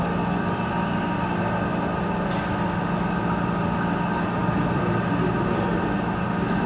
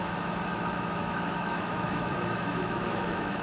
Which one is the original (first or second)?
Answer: first